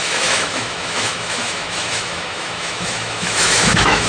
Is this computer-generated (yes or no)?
yes